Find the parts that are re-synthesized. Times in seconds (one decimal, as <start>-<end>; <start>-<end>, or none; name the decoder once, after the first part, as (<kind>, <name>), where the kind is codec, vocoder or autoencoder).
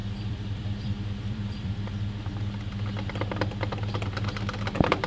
0.0-1.9 (vocoder, BigVGAN v2)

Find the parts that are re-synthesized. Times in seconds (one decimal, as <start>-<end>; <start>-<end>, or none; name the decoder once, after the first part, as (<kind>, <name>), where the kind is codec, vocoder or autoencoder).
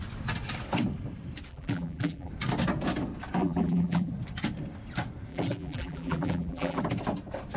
1.5-2.3 (vocoder, BigVGAN v2); 3.4-4.1; 5.3-6.8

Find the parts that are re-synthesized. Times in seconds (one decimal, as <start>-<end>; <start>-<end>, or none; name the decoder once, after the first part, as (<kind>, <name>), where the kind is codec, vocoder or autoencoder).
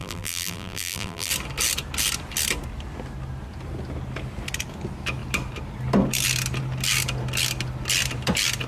0.0-1.3 (vocoder, BigVGAN v2)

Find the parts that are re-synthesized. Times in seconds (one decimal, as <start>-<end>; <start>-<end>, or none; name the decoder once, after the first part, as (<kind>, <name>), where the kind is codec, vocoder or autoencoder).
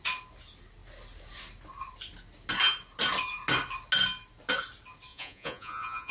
5.1-6.1 (vocoder, Vocos)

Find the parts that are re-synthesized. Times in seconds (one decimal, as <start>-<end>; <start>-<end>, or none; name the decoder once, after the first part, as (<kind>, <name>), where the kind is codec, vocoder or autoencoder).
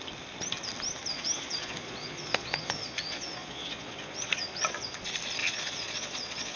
1.1-5.0 (vocoder, Vocos); 5.4-6.6